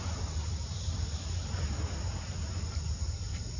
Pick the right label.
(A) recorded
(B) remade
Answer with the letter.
A